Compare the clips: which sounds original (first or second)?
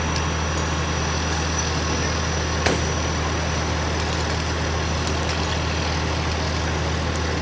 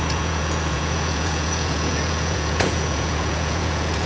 first